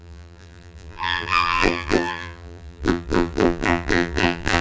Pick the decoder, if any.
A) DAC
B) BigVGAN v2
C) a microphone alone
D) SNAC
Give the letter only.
B